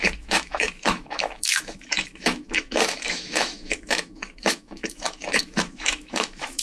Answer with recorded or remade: remade